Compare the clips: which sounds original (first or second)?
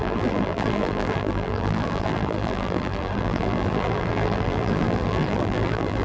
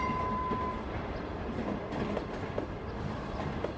second